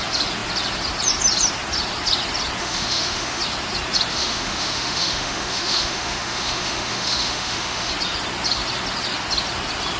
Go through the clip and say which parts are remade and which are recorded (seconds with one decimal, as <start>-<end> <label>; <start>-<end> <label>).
0.0-2.6 recorded; 2.6-3.4 remade; 3.4-4.1 recorded; 4.1-7.9 remade; 7.9-10.0 recorded